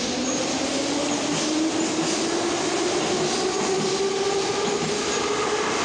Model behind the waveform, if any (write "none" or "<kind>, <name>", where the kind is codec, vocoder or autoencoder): none